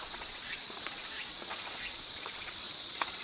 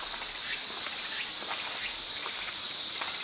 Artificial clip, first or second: first